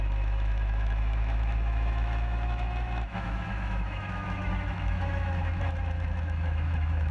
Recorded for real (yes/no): no